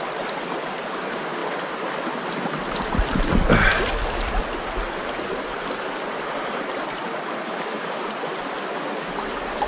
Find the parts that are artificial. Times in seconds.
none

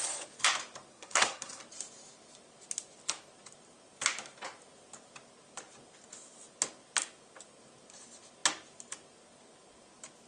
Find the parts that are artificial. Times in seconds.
0.9-1.6 (codec, SNAC)